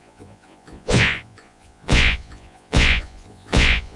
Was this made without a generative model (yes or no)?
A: no